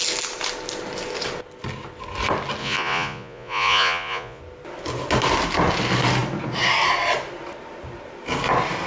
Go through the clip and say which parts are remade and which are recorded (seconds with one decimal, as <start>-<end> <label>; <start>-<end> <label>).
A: 0.0-2.6 recorded; 2.6-4.4 remade; 4.4-8.9 recorded